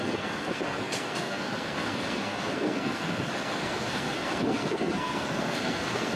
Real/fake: fake